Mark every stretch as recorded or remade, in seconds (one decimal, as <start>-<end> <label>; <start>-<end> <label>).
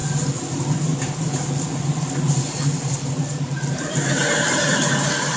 0.0-5.4 recorded